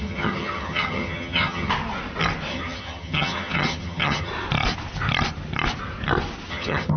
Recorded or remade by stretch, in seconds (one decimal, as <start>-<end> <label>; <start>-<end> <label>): 0.0-1.7 remade; 1.7-2.5 recorded; 2.5-4.3 remade; 4.3-6.5 recorded; 6.5-7.0 remade